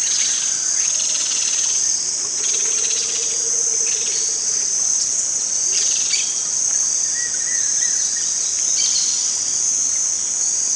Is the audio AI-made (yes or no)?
no